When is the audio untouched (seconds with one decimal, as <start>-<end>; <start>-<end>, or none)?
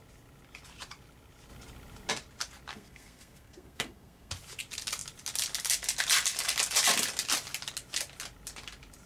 0.0-2.7; 4.3-9.1